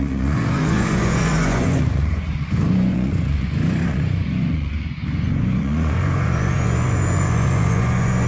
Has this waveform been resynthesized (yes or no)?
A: yes